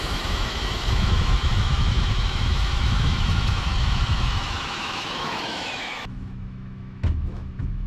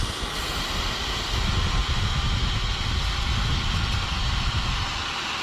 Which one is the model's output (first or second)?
first